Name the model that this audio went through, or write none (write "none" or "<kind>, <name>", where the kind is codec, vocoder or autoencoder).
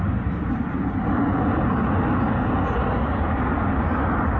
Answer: none